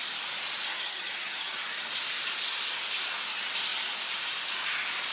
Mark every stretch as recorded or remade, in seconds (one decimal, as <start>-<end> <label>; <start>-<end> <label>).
0.0-0.7 recorded; 0.7-1.6 remade; 1.6-5.1 recorded

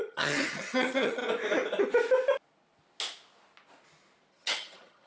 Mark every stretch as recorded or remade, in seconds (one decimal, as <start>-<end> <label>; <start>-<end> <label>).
0.0-1.2 remade; 1.2-4.3 recorded; 4.3-5.1 remade

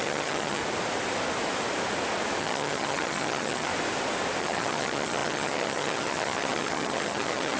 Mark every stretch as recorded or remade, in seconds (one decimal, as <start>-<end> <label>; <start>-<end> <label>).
0.0-0.6 remade; 0.6-2.4 recorded; 2.4-3.7 remade; 3.7-4.4 recorded; 4.4-7.6 remade

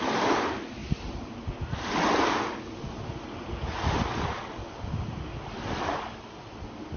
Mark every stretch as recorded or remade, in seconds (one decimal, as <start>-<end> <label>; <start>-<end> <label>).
0.0-7.0 recorded

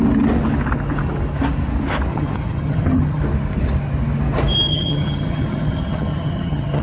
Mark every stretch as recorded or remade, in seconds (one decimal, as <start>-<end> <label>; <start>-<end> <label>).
0.0-2.1 recorded; 2.1-3.2 remade; 3.2-4.7 recorded; 4.7-6.8 remade